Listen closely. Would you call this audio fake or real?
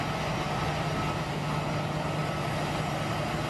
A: real